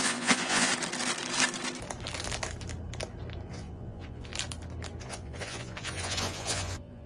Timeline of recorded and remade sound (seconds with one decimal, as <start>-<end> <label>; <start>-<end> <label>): 0.0-0.7 remade; 0.7-3.5 recorded; 3.5-4.3 remade; 4.3-5.0 recorded; 5.0-7.1 remade